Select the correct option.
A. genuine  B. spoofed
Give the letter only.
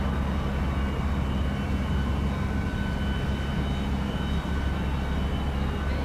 A